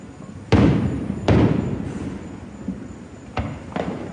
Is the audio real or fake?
real